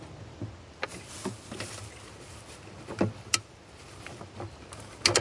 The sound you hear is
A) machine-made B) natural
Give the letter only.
B